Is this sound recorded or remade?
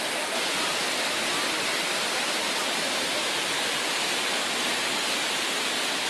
recorded